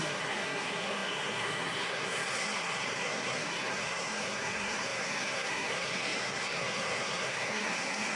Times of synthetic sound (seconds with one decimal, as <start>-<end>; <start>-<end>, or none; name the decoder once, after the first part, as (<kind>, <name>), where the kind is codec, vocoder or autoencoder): 0.0-8.2 (codec, SNAC)